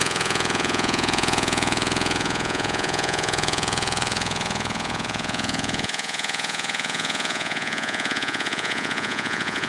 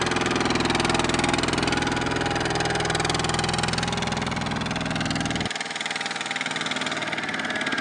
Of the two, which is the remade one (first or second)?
first